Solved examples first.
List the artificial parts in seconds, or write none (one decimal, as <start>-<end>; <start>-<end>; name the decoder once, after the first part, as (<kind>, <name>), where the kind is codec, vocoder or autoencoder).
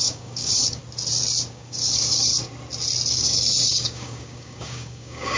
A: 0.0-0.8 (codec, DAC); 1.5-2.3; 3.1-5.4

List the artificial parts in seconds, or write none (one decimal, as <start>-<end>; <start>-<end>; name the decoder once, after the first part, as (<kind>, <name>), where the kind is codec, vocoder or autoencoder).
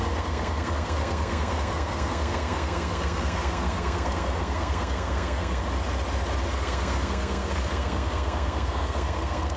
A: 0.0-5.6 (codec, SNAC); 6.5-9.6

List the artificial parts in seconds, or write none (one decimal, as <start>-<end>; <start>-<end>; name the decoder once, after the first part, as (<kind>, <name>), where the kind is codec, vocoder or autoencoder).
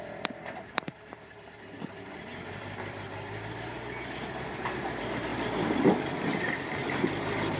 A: 0.0-2.3 (vocoder, BigVGAN v2); 4.5-5.3; 6.2-7.6